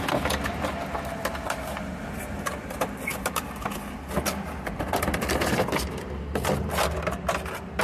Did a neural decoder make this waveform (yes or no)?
no